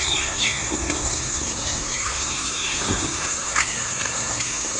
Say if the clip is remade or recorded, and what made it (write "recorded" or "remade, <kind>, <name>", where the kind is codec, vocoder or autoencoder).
remade, codec, SNAC